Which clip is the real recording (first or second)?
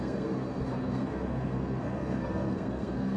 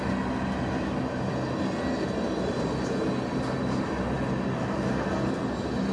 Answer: second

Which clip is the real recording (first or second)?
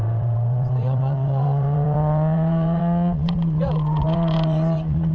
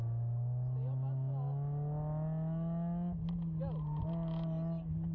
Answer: second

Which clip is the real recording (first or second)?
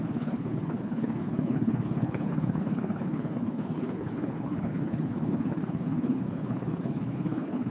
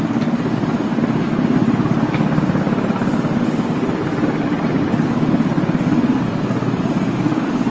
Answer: second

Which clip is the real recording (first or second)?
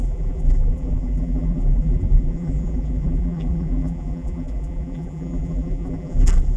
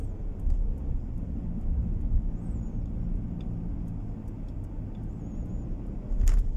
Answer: second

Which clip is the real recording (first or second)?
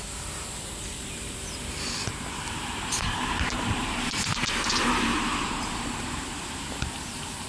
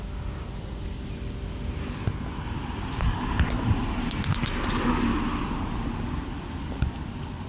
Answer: second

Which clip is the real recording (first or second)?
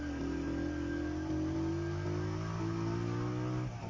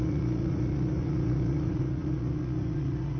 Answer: first